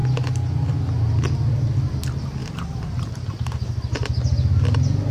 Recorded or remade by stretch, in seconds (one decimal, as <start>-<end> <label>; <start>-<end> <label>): 0.0-2.4 recorded; 2.4-3.8 remade; 3.8-5.1 recorded